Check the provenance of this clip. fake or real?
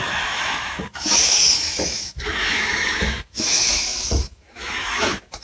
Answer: fake